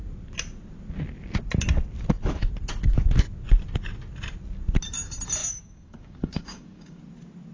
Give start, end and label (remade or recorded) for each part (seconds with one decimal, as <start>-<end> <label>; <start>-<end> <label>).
0.0-5.4 recorded; 5.4-7.0 remade; 7.0-7.5 recorded